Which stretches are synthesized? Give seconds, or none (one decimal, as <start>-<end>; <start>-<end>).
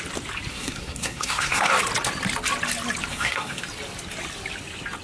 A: 0.5-1.7; 3.1-3.6